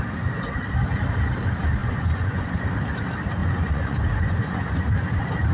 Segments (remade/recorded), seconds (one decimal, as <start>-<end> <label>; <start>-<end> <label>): 0.0-1.8 recorded; 1.8-2.6 remade; 2.6-3.4 recorded; 3.4-4.8 remade; 4.8-5.5 recorded